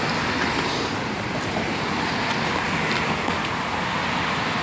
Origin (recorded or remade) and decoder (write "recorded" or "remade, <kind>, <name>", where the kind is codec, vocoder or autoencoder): recorded